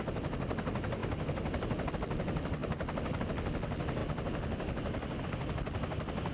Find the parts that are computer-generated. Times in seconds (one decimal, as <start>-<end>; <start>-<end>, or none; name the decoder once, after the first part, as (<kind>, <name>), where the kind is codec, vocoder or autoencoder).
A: none